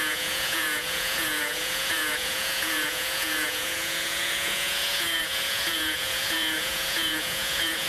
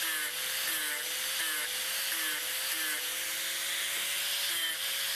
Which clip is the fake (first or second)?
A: first